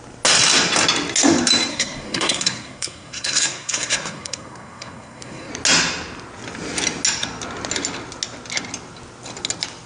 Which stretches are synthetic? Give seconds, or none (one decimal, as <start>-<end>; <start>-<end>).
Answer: 1.7-5.5